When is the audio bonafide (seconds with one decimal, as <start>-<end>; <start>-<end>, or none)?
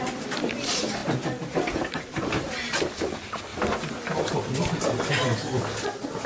0.0-6.3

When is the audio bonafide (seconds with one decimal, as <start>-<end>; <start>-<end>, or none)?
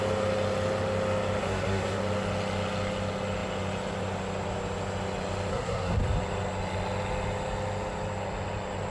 0.0-1.4; 2.0-5.5; 6.0-8.9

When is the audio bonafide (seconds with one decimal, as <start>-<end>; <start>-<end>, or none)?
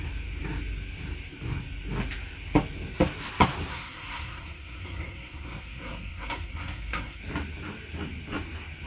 0.0-3.7; 7.2-8.9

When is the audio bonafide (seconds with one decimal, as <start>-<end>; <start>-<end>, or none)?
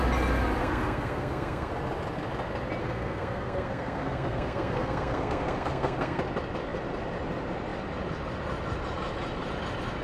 0.0-0.6; 1.7-2.8; 6.2-10.0